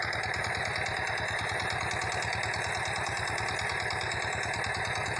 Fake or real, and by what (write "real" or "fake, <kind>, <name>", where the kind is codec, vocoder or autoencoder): real